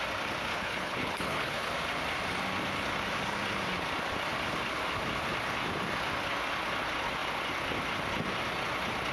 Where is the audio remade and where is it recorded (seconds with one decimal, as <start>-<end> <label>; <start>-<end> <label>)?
0.0-0.5 recorded; 0.5-1.7 remade; 1.7-9.1 recorded